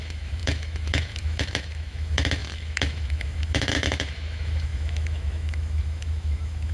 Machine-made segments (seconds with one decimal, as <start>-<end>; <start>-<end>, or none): 0.0-6.7